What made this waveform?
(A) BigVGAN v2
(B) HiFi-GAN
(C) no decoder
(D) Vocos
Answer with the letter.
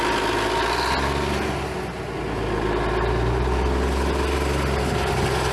C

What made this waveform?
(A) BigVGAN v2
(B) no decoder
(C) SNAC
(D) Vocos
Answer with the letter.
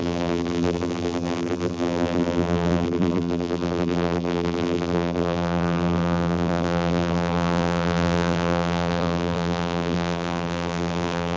A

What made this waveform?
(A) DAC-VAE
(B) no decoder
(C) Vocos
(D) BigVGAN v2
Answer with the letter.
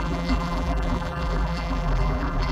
D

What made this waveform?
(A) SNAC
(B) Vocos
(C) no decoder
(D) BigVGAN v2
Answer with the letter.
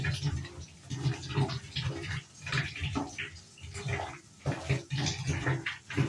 D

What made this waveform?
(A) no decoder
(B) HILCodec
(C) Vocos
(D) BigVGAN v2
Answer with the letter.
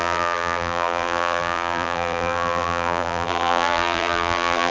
D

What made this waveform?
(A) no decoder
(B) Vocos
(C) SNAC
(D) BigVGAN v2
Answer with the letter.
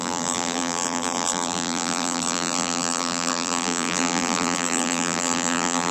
D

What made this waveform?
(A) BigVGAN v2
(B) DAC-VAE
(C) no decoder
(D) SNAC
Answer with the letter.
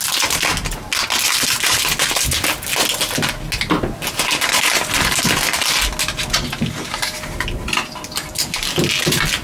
C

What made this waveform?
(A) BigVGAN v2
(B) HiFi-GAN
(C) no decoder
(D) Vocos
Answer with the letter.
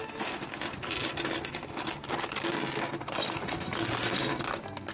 C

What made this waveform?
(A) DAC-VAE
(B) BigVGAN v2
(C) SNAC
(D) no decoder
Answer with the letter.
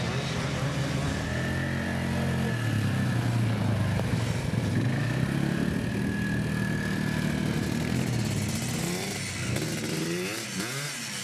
D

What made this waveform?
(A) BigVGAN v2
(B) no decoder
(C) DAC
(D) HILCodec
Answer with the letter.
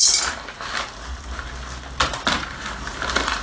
B